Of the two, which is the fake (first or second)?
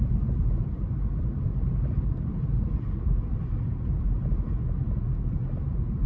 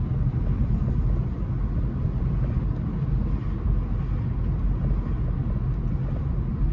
first